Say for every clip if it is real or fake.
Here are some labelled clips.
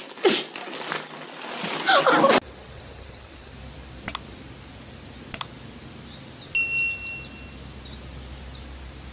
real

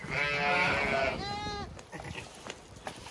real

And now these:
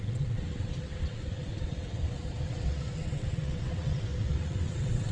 fake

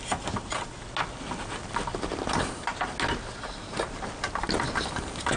real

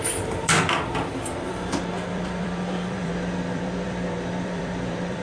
fake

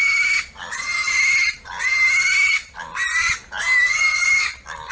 real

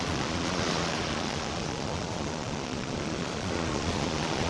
fake